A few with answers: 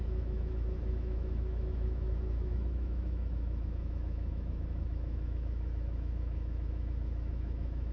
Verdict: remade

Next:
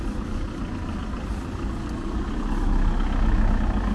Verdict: recorded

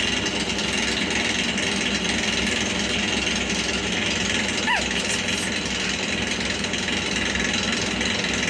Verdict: recorded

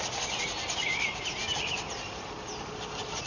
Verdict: recorded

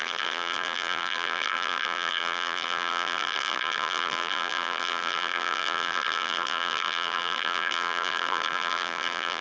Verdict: remade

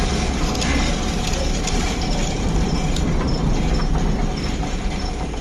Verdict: recorded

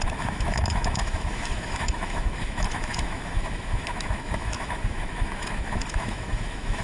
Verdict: remade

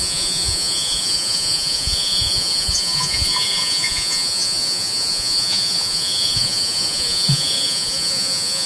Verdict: remade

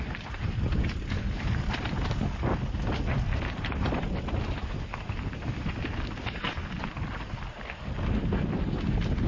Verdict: recorded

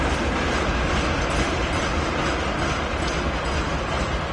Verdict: recorded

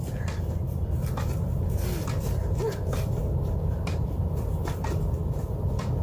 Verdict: recorded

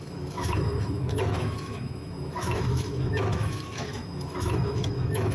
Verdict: remade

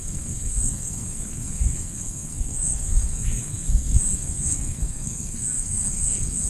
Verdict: remade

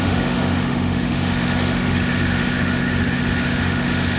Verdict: remade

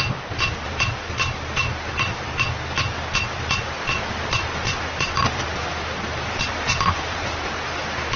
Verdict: recorded